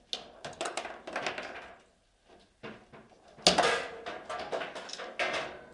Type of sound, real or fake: real